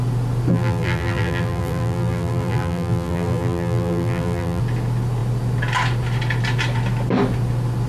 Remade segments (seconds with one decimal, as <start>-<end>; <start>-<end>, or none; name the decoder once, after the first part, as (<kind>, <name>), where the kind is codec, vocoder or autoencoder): 0.5-4.6 (vocoder, BigVGAN v2)